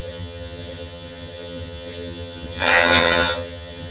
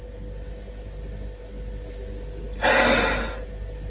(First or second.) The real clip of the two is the second